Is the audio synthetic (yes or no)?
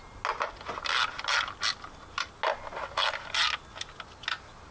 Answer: no